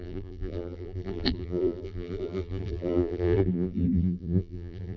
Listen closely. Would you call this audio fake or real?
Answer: fake